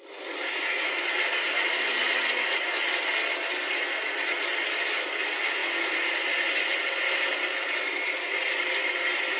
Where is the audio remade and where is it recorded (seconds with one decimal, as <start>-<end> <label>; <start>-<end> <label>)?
0.0-9.4 recorded